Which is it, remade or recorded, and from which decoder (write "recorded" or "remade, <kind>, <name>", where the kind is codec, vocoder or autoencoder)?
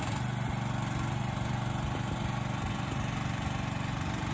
recorded